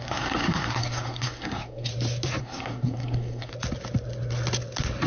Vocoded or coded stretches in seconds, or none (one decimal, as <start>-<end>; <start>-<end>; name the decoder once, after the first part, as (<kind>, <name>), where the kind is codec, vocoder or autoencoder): 0.0-1.9 (codec, SNAC); 2.4-3.5